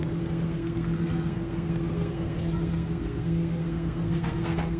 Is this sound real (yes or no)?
no